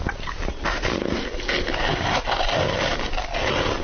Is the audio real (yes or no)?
yes